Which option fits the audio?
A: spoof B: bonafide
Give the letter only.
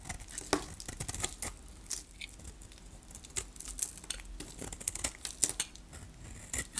B